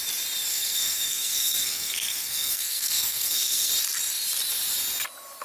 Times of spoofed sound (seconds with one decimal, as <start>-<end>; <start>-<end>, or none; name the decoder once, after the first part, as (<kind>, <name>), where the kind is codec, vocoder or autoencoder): 0.5-3.7 (codec, SNAC)